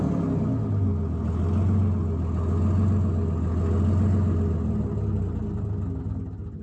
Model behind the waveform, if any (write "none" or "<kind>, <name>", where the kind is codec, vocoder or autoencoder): none